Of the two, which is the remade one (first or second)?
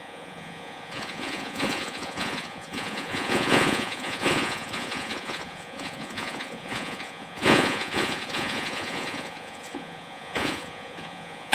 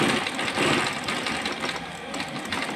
first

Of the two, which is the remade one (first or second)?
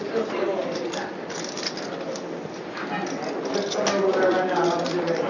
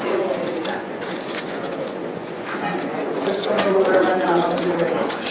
second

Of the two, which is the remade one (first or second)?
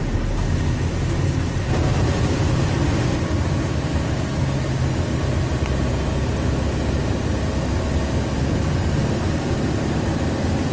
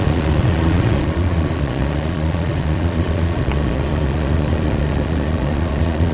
second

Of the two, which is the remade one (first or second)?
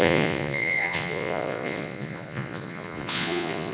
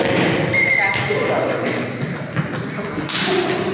first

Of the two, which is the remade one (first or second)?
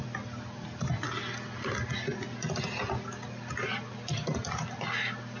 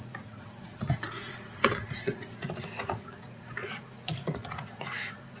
second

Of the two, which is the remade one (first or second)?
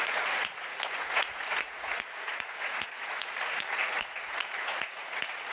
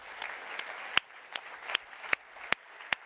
first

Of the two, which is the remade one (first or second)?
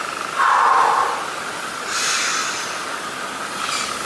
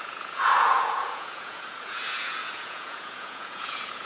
second